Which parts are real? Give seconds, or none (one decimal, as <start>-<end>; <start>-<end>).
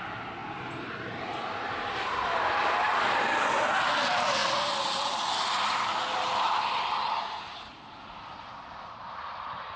0.0-9.8